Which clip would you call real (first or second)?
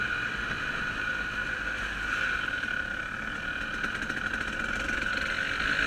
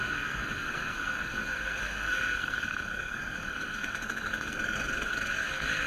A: first